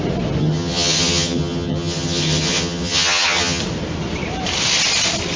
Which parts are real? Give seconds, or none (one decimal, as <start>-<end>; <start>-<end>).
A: 0.0-0.4; 3.6-5.4